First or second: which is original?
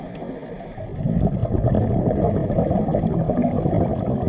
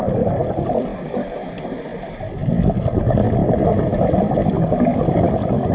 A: first